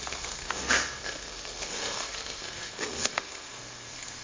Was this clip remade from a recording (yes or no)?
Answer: yes